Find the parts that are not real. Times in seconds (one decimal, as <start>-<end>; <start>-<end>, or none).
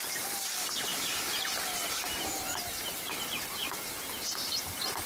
none